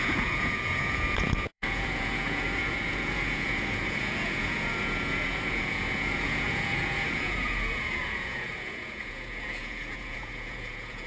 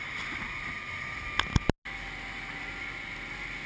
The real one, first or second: second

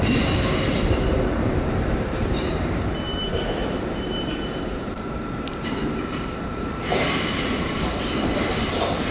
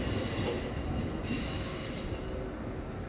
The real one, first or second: second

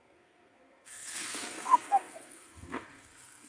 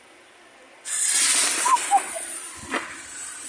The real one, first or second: second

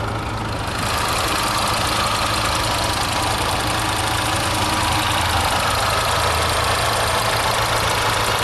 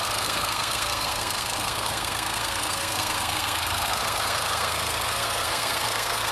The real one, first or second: first